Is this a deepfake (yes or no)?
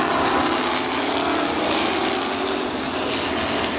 no